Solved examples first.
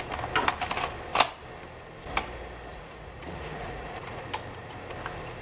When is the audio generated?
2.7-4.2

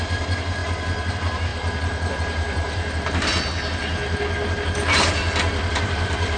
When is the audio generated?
0.0-0.6; 1.1-1.5; 2.1-3.3; 5.7-6.4

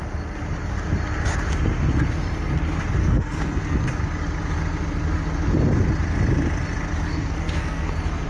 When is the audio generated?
3.0-4.0; 7.1-7.9